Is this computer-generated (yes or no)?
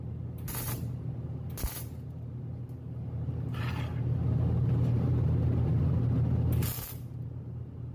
no